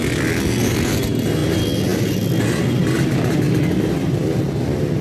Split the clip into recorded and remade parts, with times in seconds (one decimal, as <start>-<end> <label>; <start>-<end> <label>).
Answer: 0.0-5.0 recorded